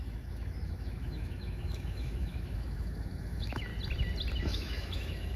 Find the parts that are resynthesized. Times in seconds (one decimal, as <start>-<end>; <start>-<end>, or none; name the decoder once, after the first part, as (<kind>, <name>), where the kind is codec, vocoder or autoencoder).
0.0-3.7 (autoencoder, DAC-VAE); 4.4-5.4